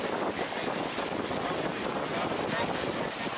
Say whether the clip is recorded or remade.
recorded